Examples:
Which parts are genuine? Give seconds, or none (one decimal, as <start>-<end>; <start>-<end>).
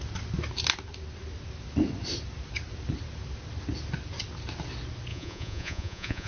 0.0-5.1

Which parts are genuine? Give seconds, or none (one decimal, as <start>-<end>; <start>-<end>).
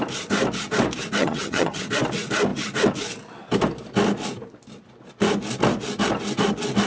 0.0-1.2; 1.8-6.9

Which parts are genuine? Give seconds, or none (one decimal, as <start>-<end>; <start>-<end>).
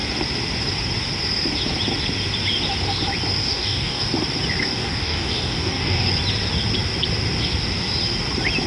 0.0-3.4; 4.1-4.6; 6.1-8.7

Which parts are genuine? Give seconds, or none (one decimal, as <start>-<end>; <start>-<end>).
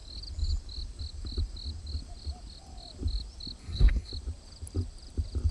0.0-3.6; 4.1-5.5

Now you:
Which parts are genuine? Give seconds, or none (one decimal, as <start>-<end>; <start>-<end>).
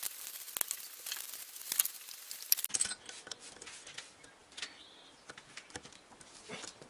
0.0-6.9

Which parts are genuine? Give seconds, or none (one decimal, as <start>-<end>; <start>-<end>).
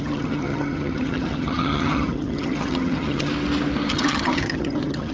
3.3-3.9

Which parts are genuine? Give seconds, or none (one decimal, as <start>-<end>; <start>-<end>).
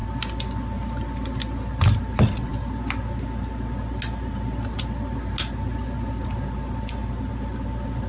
0.0-8.1